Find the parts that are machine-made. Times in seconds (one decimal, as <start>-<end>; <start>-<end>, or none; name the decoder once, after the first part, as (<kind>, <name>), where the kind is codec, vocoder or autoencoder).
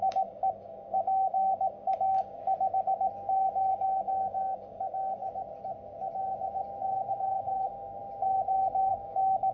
0.0-2.4 (codec, DAC); 3.7-5.2; 7.1-8.0; 8.9-9.5